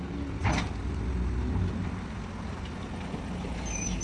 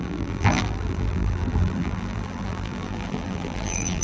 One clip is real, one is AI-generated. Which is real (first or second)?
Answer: first